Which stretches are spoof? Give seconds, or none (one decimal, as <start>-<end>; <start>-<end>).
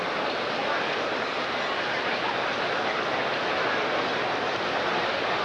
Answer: none